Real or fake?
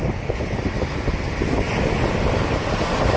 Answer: real